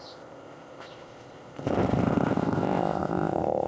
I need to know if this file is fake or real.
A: fake